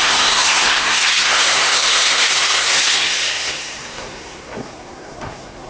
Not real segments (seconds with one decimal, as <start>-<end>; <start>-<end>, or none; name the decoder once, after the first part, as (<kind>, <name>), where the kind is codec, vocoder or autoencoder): 0.0-5.7 (codec, SNAC)